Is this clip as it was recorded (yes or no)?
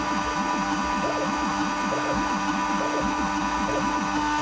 yes